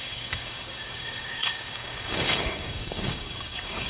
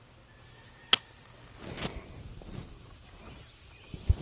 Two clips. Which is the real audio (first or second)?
second